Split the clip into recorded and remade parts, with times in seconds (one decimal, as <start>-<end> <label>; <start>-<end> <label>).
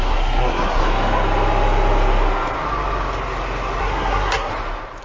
0.0-0.8 remade; 0.8-3.8 recorded; 3.8-4.5 remade; 4.5-5.0 recorded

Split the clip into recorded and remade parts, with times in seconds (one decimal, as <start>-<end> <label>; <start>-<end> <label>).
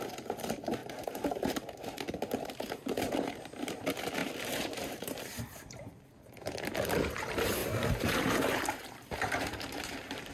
0.0-0.8 recorded; 0.8-3.8 remade; 3.8-4.2 recorded; 4.2-5.4 remade; 5.4-7.6 recorded; 7.6-10.3 remade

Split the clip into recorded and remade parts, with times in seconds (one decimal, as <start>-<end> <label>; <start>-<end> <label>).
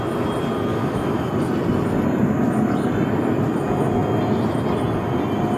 0.0-0.7 recorded; 0.7-1.3 remade; 1.3-5.6 recorded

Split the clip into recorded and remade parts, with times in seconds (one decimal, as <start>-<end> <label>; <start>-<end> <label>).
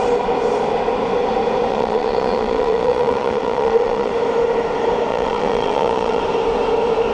0.0-1.7 recorded; 1.7-4.1 remade; 4.1-5.1 recorded; 5.1-6.2 remade; 6.2-7.1 recorded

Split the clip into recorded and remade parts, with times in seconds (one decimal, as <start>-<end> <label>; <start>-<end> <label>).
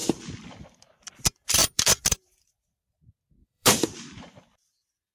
0.0-1.6 recorded; 1.6-3.0 remade; 3.0-3.4 recorded; 3.4-4.2 remade; 4.2-5.1 recorded